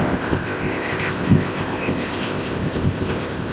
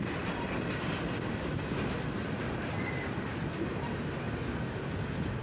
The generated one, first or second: first